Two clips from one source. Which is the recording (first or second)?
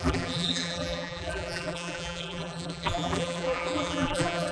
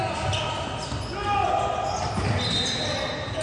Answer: second